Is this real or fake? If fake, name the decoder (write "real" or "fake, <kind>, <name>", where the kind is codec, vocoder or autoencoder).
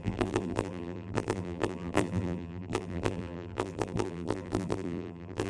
fake, vocoder, BigVGAN v2